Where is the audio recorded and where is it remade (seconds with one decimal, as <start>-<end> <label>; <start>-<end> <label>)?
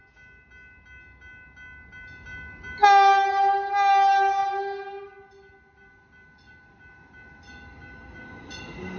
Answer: 0.0-9.0 recorded